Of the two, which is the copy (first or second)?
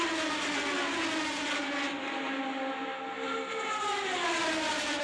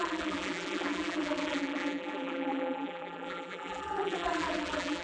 second